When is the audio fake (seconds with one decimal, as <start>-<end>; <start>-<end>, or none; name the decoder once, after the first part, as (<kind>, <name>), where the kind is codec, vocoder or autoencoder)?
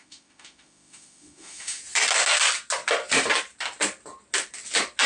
0.0-1.8 (autoencoder, DAC-VAE)